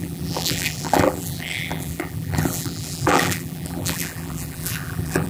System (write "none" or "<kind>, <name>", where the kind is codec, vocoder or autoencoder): vocoder, BigVGAN v2